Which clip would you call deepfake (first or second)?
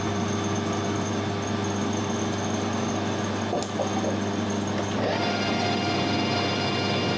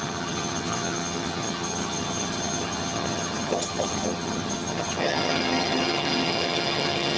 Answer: second